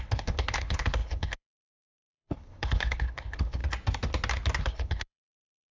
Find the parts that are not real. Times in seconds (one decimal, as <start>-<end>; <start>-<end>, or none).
0.0-3.6; 4.6-5.7